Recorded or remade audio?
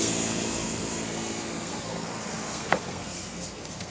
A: remade